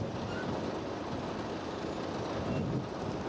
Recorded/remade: recorded